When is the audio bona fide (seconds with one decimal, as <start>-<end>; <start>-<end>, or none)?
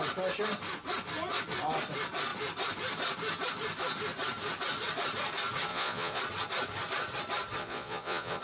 0.0-5.7; 6.2-7.6